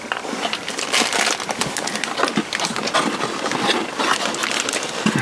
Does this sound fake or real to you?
real